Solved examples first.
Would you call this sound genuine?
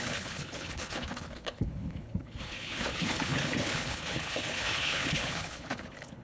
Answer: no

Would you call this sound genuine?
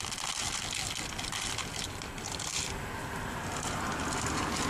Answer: yes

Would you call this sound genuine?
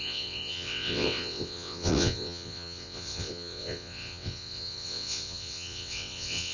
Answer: no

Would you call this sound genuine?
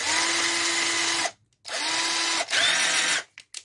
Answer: yes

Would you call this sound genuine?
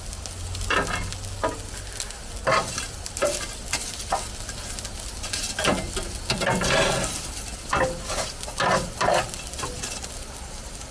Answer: yes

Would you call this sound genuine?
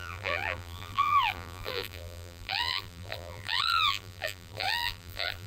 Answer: no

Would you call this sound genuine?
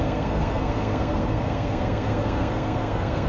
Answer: no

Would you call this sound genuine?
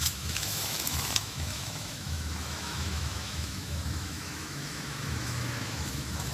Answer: no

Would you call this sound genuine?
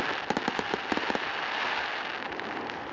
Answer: yes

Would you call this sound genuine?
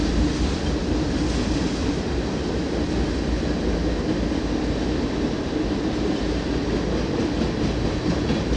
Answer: yes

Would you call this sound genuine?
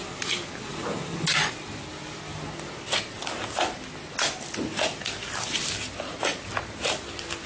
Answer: yes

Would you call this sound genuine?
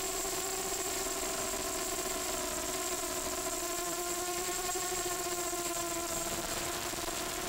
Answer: no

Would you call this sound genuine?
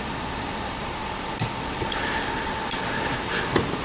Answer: no